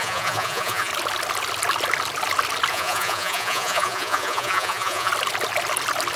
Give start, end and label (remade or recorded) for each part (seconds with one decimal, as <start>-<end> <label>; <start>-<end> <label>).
0.0-0.9 remade; 0.9-2.7 recorded; 2.7-5.1 remade; 5.1-6.2 recorded